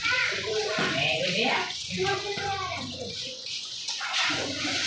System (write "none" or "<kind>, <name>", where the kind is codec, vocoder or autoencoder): vocoder, Vocos